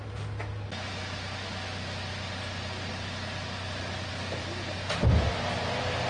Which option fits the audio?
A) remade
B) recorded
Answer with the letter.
B